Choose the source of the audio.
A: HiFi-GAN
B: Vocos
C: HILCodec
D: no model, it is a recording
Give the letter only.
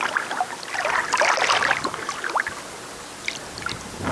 D